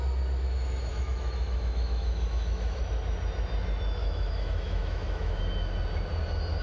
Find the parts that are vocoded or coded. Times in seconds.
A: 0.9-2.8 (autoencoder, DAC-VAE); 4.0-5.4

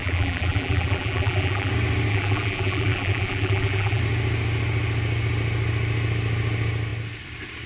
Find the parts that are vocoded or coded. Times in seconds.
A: 0.0-1.7 (vocoder, BigVGAN v2); 2.1-4.0

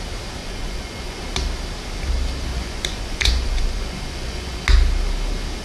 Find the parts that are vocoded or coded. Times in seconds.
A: 0.4-1.2 (vocoder, Vocos); 2.5-4.6

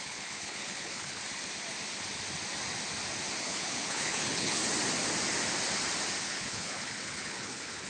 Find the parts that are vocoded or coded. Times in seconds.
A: 0.0-1.2 (codec, HILCodec); 3.4-4.6; 6.2-7.9

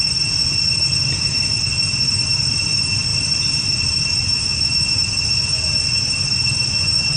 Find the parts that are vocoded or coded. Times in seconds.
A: none

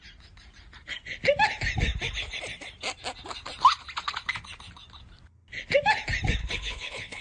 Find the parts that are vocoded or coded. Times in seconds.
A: 6.4-7.2 (codec, HILCodec)